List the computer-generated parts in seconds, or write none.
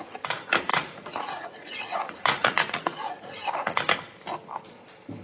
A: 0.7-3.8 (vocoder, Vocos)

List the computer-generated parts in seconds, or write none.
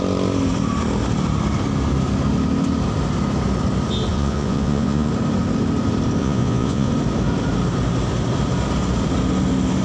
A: 4.1-5.1 (vocoder, Vocos); 6.2-6.9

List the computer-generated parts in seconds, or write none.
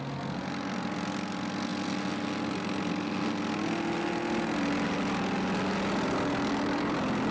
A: none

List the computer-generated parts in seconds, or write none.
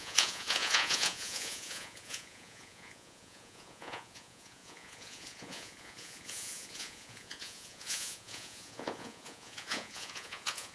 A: 0.0-10.7 (vocoder, Vocos)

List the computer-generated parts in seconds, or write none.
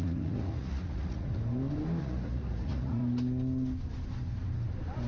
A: 0.0-1.3 (vocoder, Vocos); 2.0-3.0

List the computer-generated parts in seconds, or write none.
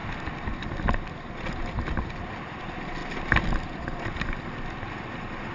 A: none